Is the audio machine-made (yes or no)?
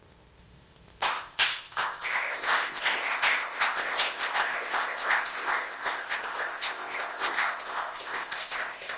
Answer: yes